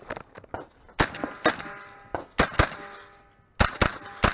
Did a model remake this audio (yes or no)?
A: no